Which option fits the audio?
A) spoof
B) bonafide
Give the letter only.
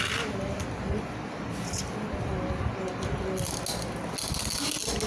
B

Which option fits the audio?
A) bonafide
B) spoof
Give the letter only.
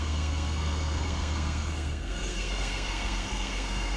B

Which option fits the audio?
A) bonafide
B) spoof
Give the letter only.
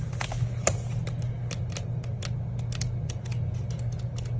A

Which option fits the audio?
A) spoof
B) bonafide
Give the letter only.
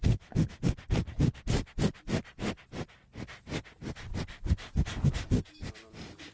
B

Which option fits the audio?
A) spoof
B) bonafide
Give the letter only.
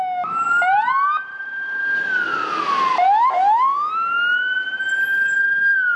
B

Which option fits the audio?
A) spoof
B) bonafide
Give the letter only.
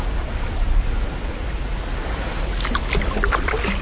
B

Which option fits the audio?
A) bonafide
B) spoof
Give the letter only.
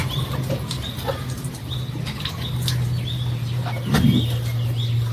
A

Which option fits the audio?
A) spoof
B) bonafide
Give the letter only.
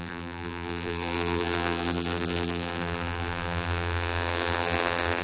A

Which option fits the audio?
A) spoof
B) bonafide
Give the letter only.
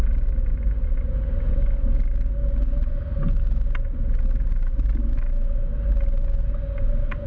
B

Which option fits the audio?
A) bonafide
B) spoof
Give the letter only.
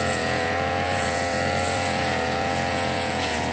B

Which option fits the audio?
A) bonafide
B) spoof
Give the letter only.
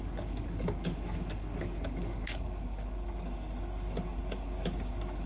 B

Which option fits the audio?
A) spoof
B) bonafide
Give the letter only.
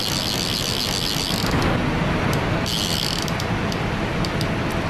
B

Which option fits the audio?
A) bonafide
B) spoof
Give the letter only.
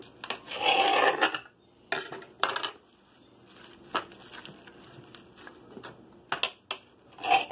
A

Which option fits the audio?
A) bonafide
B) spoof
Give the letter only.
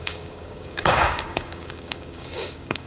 B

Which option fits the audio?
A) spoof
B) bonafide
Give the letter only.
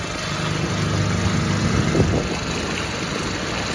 B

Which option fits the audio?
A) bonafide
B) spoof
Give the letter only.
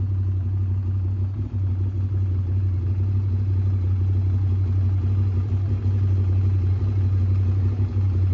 A